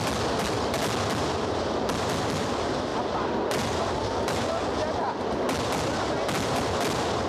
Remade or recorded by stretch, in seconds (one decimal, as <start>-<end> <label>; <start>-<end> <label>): 0.0-7.3 recorded